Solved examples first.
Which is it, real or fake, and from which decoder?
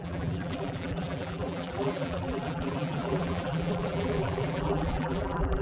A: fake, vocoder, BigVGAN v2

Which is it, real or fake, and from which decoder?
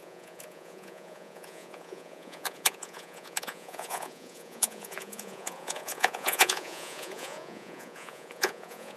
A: fake, vocoder, Vocos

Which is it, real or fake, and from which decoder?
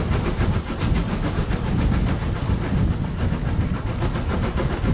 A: real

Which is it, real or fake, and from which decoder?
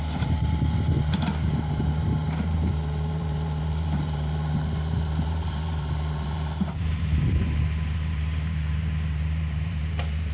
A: fake, vocoder, BigVGAN v2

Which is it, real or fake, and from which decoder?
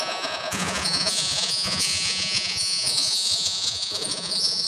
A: fake, vocoder, Vocos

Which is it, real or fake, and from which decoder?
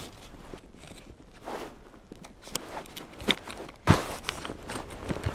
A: real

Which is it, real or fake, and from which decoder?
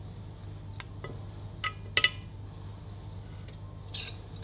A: real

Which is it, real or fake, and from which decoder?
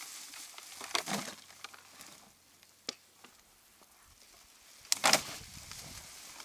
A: real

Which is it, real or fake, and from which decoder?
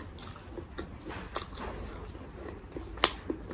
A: real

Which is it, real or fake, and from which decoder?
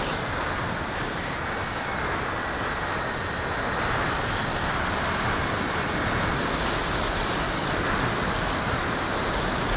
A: real